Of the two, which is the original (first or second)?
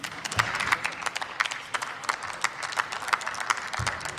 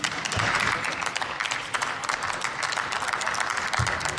first